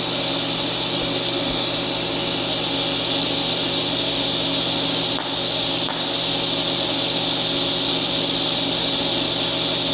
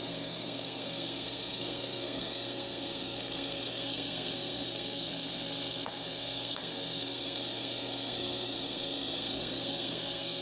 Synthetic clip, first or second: second